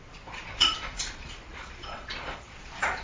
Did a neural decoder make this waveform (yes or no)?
yes